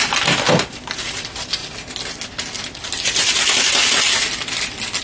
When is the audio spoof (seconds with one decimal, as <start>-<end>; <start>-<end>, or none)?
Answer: 0.0-1.6; 4.6-5.0